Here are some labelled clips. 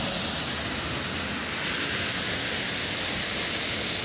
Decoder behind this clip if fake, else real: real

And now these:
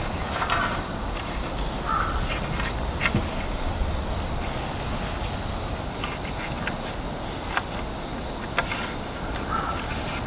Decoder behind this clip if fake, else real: real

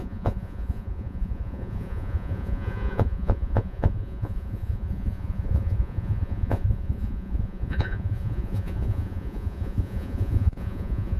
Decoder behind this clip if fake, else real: fake, vocoder, Vocos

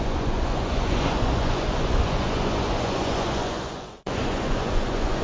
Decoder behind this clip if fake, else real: fake, vocoder, Vocos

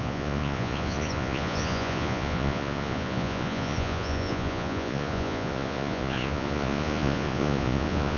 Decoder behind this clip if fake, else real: fake, vocoder, Vocos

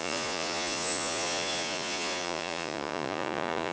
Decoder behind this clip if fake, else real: fake, vocoder, Vocos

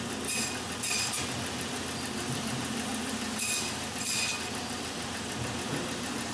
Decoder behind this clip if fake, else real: real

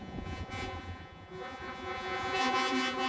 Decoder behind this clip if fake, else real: fake, vocoder, Vocos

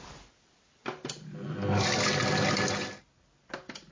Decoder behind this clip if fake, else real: real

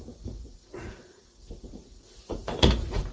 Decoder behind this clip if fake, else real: fake, vocoder, Vocos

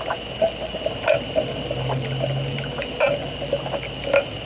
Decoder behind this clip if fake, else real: real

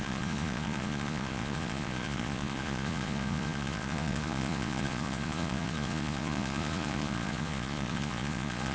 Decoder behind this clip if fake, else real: fake, vocoder, Vocos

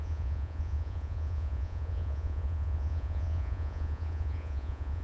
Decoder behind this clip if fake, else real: fake, vocoder, Vocos